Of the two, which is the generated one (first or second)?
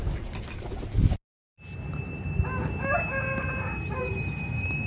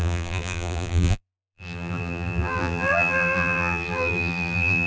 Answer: second